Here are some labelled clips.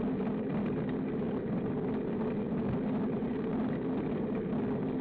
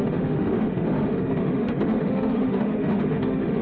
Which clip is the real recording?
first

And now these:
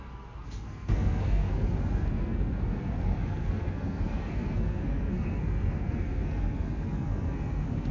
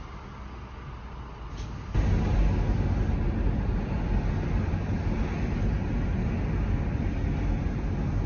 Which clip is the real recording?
second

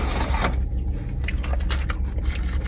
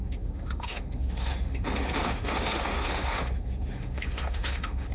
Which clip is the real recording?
first